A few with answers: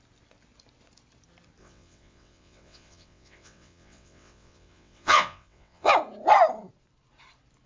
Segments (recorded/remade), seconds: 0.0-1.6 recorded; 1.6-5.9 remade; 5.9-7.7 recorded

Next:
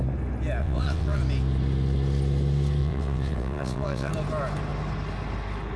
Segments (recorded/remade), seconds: 0.0-0.6 recorded; 0.6-1.2 remade; 1.2-2.8 recorded; 2.8-4.1 remade; 4.1-5.8 recorded

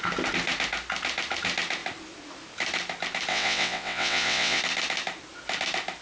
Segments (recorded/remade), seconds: 0.0-3.3 recorded; 3.3-4.6 remade; 4.6-6.0 recorded

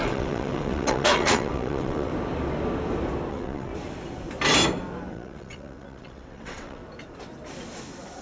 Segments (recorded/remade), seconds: 0.0-2.1 remade; 2.1-3.3 recorded; 3.3-3.7 remade; 3.7-5.1 recorded; 5.1-6.8 remade; 6.8-8.2 recorded

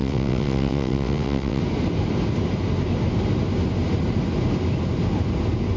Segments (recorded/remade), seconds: 0.0-1.6 remade; 1.6-5.8 recorded

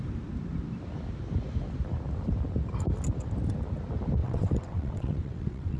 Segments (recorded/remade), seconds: 0.0-4.2 recorded; 4.2-5.8 remade

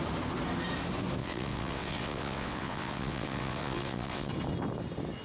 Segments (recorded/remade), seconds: 0.0-1.2 recorded; 1.2-4.3 remade; 4.3-5.2 recorded